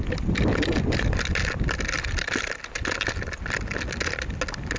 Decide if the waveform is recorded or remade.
recorded